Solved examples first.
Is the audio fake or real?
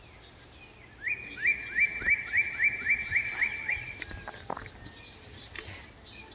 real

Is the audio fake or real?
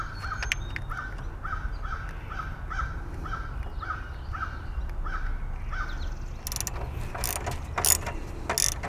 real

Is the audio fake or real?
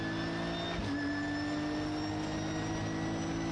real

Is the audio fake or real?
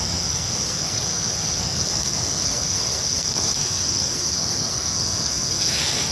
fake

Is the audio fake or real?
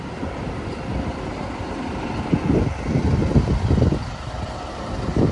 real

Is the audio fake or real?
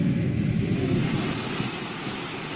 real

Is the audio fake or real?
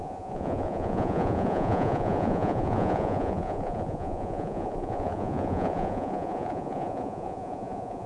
fake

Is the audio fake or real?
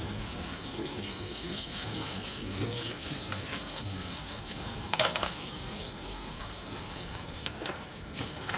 fake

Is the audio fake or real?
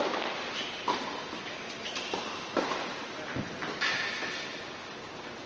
real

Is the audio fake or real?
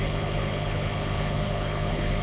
fake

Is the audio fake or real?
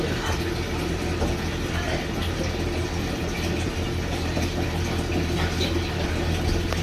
real